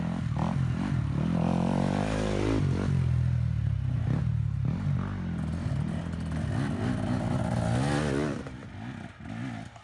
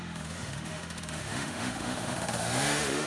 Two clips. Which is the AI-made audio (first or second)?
second